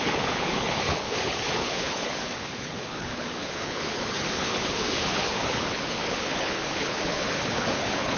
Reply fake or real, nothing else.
fake